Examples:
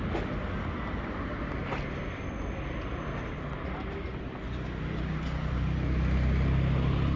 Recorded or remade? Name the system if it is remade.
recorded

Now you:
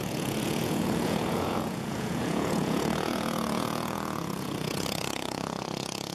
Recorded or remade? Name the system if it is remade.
remade, vocoder, Vocos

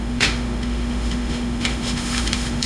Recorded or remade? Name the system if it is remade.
remade, autoencoder, DAC-VAE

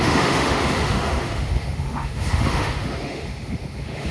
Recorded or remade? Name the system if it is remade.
remade, autoencoder, DAC-VAE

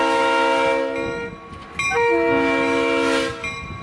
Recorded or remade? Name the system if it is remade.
recorded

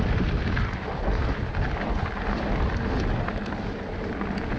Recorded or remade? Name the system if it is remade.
recorded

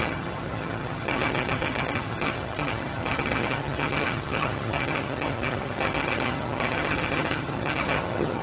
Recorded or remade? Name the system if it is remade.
remade, vocoder, HiFi-GAN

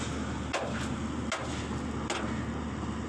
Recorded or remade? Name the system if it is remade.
recorded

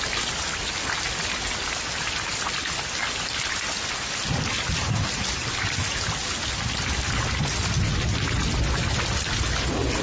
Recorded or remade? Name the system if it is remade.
recorded